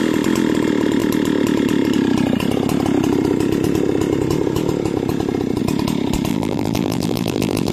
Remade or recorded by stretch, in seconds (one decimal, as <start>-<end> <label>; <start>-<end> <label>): 0.0-6.3 recorded; 6.3-7.7 remade